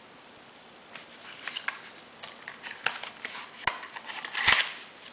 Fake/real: real